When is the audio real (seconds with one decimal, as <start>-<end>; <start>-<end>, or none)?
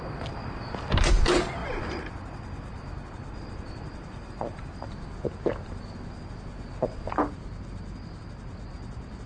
0.0-1.6; 5.2-9.3